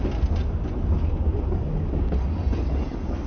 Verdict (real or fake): real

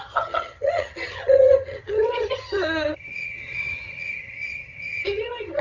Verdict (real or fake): fake